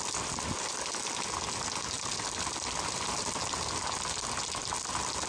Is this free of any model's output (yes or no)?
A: yes